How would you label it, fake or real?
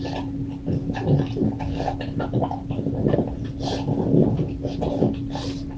real